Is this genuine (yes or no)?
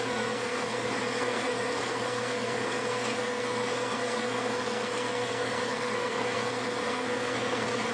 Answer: no